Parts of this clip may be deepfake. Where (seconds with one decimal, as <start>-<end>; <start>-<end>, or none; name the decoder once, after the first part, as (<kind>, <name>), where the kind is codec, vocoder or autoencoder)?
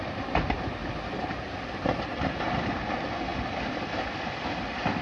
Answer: 0.8-2.7 (vocoder, BigVGAN v2)